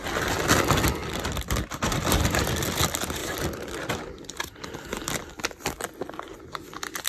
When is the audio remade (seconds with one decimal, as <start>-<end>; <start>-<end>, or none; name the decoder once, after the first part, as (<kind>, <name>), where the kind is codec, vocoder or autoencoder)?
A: 1.0-2.8 (vocoder, BigVGAN v2); 3.2-3.9